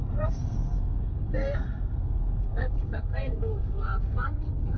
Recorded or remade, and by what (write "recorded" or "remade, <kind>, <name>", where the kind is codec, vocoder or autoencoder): remade, codec, SNAC